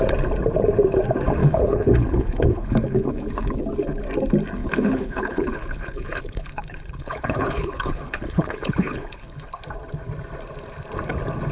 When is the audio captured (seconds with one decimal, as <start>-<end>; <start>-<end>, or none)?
0.0-1.4; 3.6-4.6; 9.6-11.5